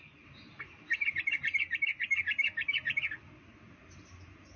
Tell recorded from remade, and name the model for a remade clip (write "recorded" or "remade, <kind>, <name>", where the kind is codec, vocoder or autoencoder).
recorded